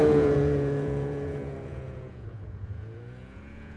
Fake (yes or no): yes